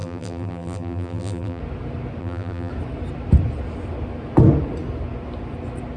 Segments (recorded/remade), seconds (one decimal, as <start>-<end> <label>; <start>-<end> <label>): 0.0-1.6 remade; 1.6-2.2 recorded; 2.2-2.7 remade; 2.7-6.0 recorded